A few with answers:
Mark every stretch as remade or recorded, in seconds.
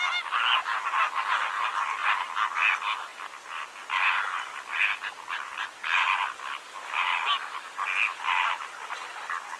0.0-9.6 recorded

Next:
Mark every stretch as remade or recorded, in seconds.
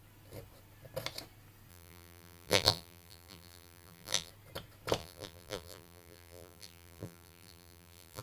0.0-1.7 recorded; 1.7-4.3 remade; 4.3-5.0 recorded; 5.0-8.2 remade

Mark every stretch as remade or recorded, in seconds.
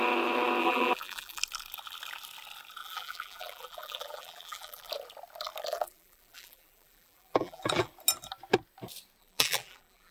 0.0-0.6 recorded; 0.6-1.4 remade; 1.4-2.8 recorded; 2.8-4.9 remade; 4.9-5.7 recorded; 5.7-7.9 remade; 7.9-9.2 recorded; 9.2-10.1 remade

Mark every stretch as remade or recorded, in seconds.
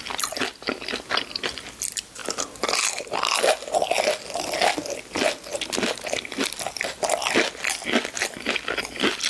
0.0-9.3 recorded